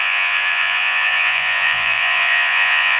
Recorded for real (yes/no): no